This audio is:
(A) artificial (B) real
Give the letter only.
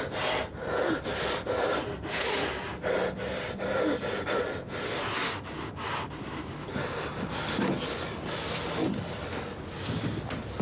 B